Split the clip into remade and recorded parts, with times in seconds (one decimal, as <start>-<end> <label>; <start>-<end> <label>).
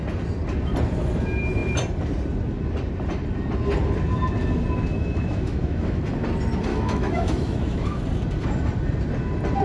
0.0-4.9 recorded; 4.9-6.0 remade; 6.0-6.7 recorded; 6.7-8.0 remade; 8.0-9.6 recorded